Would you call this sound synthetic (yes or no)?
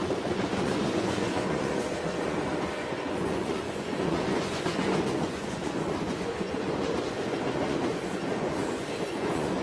yes